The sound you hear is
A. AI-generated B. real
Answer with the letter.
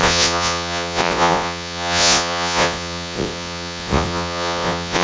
A